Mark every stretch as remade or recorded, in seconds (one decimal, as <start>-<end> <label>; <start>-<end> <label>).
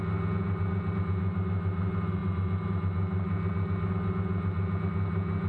0.0-5.5 recorded